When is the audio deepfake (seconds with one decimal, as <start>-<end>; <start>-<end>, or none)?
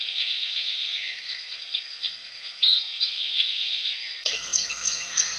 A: 0.0-5.4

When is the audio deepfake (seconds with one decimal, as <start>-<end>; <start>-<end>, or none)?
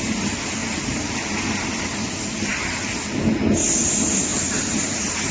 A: none